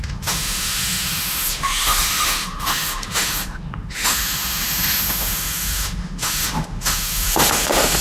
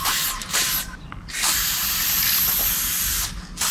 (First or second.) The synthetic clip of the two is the first